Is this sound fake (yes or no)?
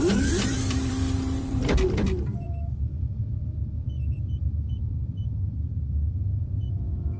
yes